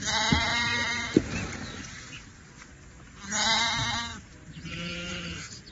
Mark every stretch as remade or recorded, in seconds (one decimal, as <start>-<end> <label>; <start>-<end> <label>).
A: 0.0-0.5 recorded; 0.5-2.6 remade; 2.6-4.1 recorded; 4.1-5.7 remade